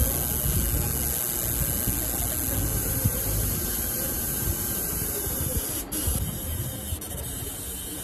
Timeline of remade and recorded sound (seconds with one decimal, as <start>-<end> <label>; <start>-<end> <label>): 0.0-2.7 recorded; 2.7-7.5 remade; 7.5-8.0 recorded